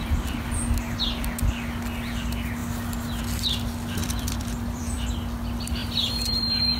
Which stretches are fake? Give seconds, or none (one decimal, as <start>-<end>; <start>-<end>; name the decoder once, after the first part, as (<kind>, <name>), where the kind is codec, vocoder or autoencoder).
4.0-5.1 (vocoder, BigVGAN v2); 5.8-6.8